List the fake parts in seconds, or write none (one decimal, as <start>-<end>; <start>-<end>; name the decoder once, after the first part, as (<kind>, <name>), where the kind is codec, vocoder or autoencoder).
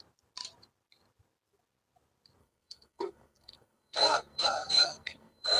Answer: 2.4-5.6 (codec, SNAC)